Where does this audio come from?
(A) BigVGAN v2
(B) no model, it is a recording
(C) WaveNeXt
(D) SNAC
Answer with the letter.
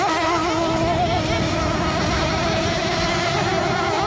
B